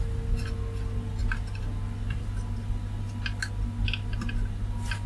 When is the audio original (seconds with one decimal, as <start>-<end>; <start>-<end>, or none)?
0.0-5.1